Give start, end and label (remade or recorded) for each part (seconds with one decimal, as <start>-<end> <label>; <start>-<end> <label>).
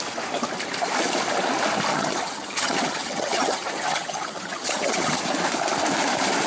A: 0.0-1.9 recorded; 1.9-5.2 remade; 5.2-6.5 recorded